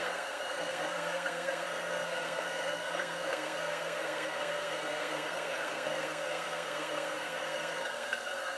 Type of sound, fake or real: fake